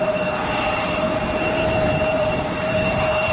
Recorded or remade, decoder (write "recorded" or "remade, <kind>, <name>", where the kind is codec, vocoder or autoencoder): remade, vocoder, BigVGAN v2